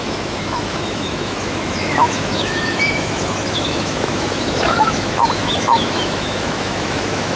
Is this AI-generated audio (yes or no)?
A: yes